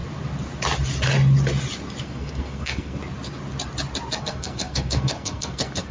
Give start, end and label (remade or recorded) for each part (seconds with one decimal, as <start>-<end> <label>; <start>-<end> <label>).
0.0-2.0 recorded; 2.0-3.0 remade; 3.0-4.2 recorded; 4.2-5.9 remade